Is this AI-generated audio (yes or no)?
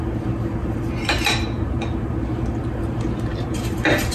yes